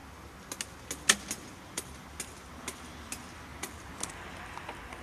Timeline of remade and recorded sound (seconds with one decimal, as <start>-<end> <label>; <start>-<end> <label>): 0.0-5.0 recorded